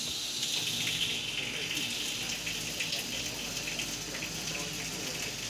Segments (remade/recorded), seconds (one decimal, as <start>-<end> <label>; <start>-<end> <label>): 0.0-5.5 recorded

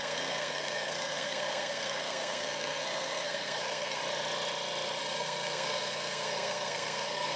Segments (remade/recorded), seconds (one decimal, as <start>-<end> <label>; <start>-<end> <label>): 0.0-4.0 remade; 4.0-5.0 recorded; 5.0-7.4 remade

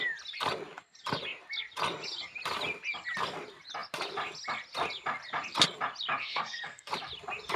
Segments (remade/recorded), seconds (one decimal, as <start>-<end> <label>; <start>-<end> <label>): 0.0-6.2 recorded; 6.2-6.9 remade; 6.9-7.6 recorded

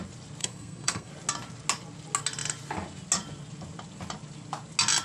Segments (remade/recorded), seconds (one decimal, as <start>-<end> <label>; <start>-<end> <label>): 0.0-0.4 recorded; 0.4-1.1 remade; 1.1-5.0 recorded